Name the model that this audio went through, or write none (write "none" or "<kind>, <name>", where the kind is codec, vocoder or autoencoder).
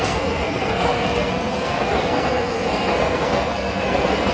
codec, SNAC